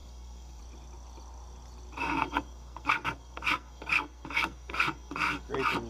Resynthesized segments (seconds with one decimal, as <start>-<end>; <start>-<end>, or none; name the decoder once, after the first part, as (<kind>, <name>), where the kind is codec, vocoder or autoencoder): 0.0-0.6 (codec, SNAC); 2.0-5.5